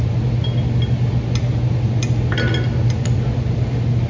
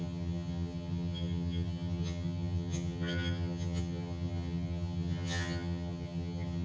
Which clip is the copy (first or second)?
second